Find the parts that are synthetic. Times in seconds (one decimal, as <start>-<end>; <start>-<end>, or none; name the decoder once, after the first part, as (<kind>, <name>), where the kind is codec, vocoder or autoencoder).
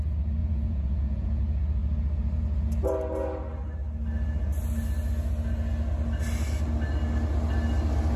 0.4-1.4 (vocoder, Vocos)